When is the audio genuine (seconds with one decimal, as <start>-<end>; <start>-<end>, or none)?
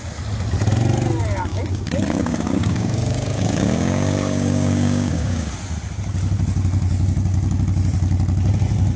0.0-1.5; 5.5-9.0